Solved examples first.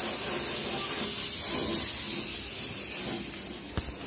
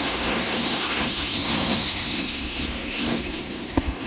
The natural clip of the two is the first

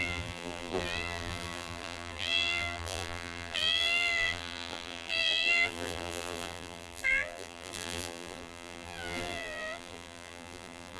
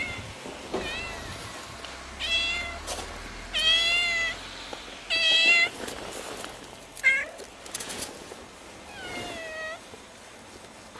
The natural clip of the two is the second